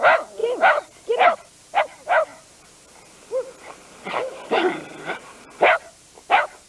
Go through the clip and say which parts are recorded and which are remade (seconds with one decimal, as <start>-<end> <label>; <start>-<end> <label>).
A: 0.0-0.4 recorded; 0.4-1.8 remade; 1.8-4.9 recorded; 4.9-5.5 remade; 5.5-6.7 recorded